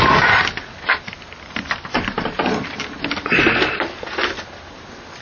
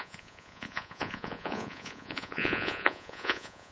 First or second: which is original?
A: first